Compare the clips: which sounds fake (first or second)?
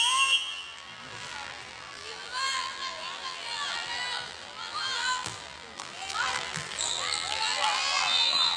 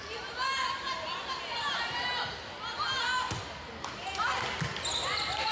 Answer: first